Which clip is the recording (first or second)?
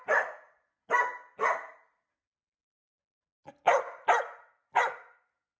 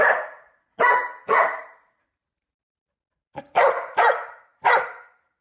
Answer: first